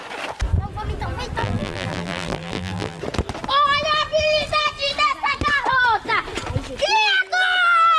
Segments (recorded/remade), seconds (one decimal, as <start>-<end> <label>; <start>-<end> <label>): 0.0-1.4 recorded; 1.4-3.0 remade; 3.0-8.0 recorded